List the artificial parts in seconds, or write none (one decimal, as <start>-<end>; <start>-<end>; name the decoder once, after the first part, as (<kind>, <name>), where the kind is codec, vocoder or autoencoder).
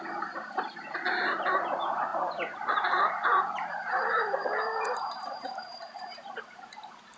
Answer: 0.0-7.2 (vocoder, BigVGAN v2)